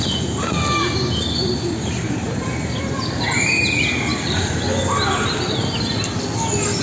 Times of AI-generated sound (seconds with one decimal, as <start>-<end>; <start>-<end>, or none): 1.4-2.5